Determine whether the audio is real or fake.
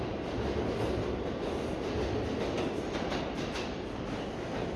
real